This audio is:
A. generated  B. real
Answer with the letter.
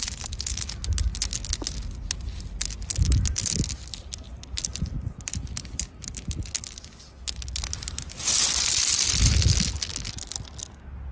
B